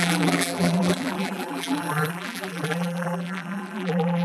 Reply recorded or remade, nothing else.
remade